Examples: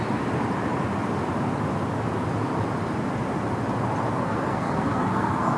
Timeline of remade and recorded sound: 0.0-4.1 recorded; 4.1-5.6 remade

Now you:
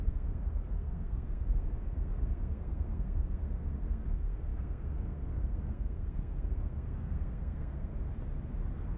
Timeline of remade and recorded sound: 0.0-7.9 remade; 7.9-9.0 recorded

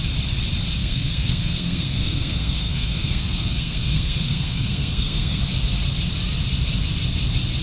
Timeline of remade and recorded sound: 0.0-0.8 recorded; 0.8-5.4 remade; 5.4-7.6 recorded

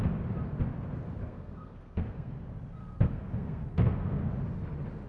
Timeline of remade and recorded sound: 0.0-1.2 recorded; 1.2-2.3 remade; 2.3-2.8 recorded; 2.8-4.2 remade; 4.2-5.1 recorded

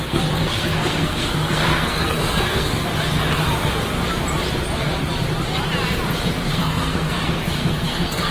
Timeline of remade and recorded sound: 0.0-2.9 remade; 2.9-6.5 recorded; 6.5-8.3 remade

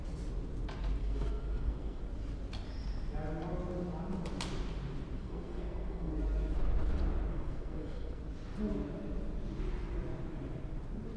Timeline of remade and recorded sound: 0.0-1.0 recorded; 1.0-2.0 remade; 2.0-5.2 recorded; 5.2-6.1 remade; 6.1-7.3 recorded; 7.3-8.2 remade; 8.2-11.2 recorded